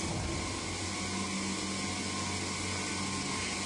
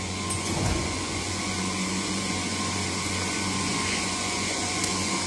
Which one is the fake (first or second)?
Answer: second